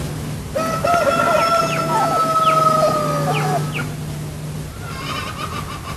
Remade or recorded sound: recorded